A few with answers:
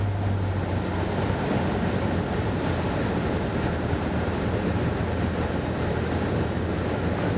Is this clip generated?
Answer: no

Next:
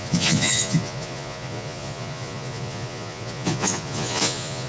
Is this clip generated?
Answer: yes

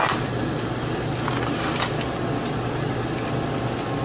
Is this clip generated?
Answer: no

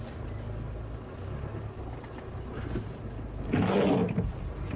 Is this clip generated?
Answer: no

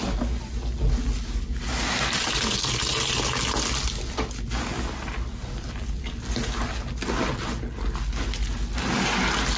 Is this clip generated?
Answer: no